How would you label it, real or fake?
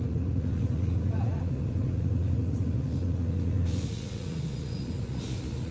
fake